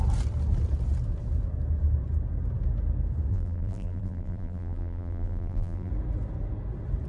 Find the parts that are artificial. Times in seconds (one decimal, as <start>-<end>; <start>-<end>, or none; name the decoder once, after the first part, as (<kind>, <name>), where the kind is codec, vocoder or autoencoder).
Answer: 3.3-5.9 (vocoder, BigVGAN v2)